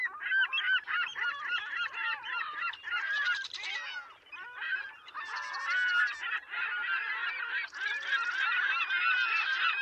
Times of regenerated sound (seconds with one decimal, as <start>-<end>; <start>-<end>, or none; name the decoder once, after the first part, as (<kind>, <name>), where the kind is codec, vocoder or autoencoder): 1.1-4.8 (vocoder, BigVGAN v2); 7.2-8.1